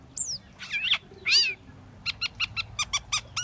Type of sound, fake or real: real